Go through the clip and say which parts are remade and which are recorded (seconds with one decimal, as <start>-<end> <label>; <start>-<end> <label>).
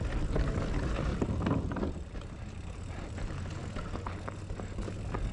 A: 0.0-1.1 recorded; 1.1-3.1 remade; 3.1-3.6 recorded; 3.6-4.1 remade; 4.1-5.3 recorded